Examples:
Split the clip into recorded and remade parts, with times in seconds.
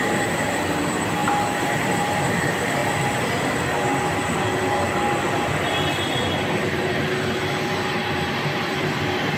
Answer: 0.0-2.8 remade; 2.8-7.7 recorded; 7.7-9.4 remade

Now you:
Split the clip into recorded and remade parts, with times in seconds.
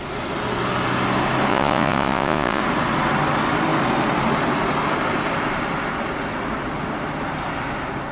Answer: 0.0-1.5 recorded; 1.5-2.6 remade; 2.6-8.1 recorded